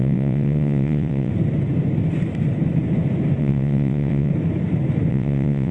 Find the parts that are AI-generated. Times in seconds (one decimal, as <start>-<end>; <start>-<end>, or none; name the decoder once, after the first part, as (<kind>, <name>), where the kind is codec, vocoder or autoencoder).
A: 0.0-1.3 (vocoder, WaveNeXt); 3.4-4.3; 5.1-5.7